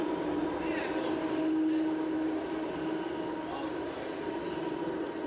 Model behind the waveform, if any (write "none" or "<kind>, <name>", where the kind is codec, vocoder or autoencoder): none